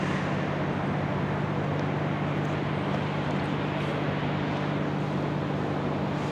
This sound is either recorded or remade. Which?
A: recorded